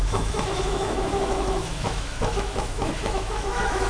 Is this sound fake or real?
fake